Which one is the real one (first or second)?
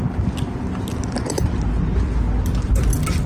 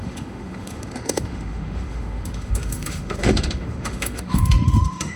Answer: first